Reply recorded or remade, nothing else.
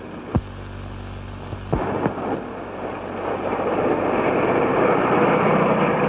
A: recorded